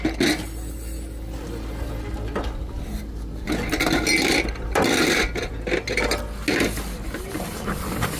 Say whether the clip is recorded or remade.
recorded